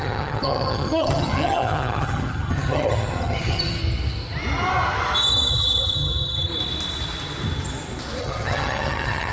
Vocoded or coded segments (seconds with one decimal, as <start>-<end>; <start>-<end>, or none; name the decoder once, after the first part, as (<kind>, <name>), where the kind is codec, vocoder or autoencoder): 0.0-3.8 (vocoder, HiFi-GAN); 5.5-6.5; 8.2-9.3